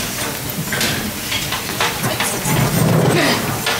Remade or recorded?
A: remade